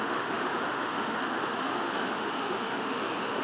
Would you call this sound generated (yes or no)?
yes